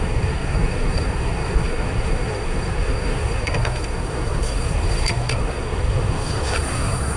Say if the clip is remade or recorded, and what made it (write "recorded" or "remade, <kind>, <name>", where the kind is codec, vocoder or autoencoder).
remade, codec, SNAC